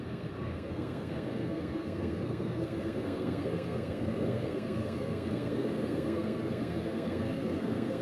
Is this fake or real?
fake